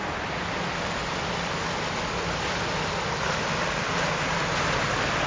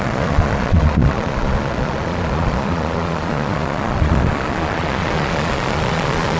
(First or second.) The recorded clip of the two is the first